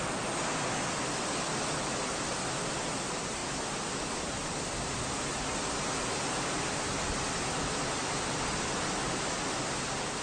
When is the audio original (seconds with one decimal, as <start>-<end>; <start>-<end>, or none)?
0.0-10.2

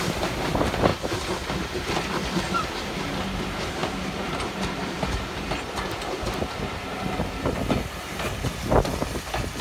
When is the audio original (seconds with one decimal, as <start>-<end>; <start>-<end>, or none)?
0.0-9.6